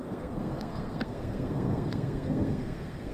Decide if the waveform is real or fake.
fake